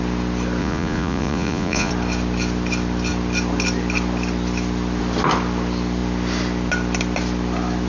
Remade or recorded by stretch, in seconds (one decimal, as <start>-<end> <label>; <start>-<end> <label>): 0.0-0.6 recorded; 0.6-1.9 remade; 1.9-7.9 recorded